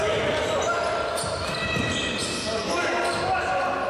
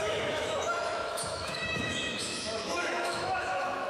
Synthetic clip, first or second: second